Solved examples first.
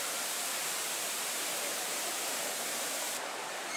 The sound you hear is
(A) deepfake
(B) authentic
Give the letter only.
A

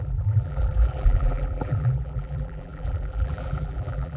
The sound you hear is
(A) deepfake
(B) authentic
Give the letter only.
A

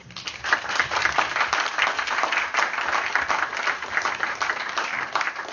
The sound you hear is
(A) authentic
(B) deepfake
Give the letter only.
B